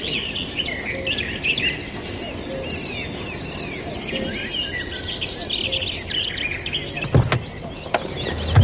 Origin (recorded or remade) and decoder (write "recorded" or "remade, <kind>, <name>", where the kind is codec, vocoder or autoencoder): recorded